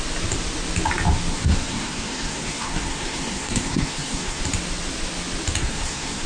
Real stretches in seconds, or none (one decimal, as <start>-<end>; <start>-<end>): 0.0-1.3; 4.4-5.6